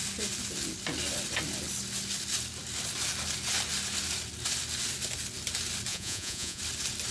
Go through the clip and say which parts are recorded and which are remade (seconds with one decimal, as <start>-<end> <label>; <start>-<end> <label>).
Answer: 0.0-5.9 recorded; 5.9-6.6 remade; 6.6-7.1 recorded